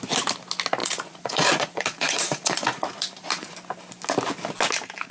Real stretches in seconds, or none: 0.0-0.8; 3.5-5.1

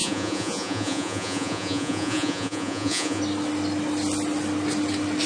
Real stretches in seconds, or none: 3.2-5.3

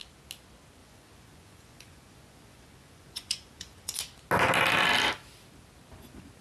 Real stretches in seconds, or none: 0.0-0.8; 4.0-6.4